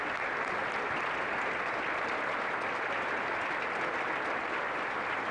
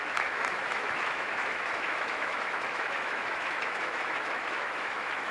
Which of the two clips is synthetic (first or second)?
second